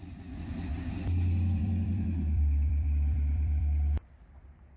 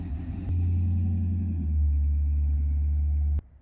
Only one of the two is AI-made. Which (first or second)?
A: first